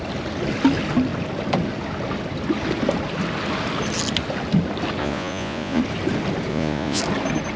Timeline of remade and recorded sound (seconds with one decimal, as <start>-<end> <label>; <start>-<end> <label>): 0.0-5.0 recorded; 5.0-5.8 remade; 5.8-6.5 recorded; 6.5-7.0 remade; 7.0-7.6 recorded